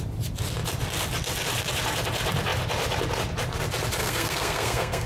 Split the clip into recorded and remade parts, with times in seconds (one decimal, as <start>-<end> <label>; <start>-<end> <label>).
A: 0.0-4.0 recorded; 4.0-5.1 remade